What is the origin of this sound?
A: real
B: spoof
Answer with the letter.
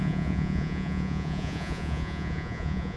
B